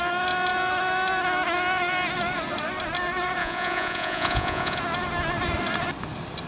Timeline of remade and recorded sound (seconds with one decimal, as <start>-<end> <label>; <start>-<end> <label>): 0.0-3.4 recorded; 3.4-4.8 remade; 4.8-6.5 recorded